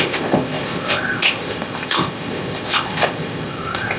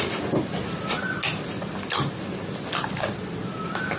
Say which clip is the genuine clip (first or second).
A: second